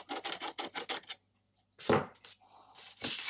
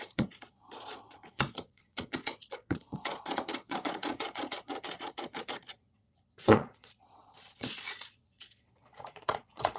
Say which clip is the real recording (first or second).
first